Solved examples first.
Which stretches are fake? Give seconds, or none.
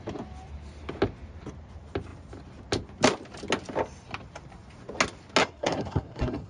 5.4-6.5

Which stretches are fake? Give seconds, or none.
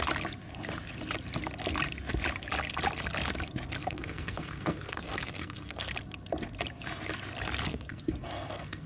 3.8-5.9; 7.7-8.9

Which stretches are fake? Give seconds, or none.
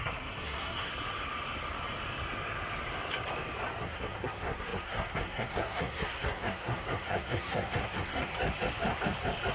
0.0-0.9; 3.8-8.3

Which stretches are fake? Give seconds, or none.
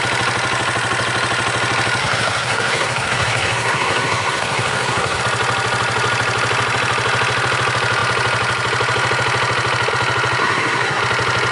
2.0-5.2; 10.4-11.0